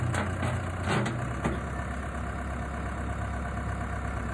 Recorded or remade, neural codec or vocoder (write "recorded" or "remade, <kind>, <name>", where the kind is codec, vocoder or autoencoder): recorded